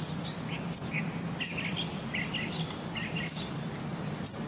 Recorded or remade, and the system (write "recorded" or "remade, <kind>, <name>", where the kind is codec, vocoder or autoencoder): recorded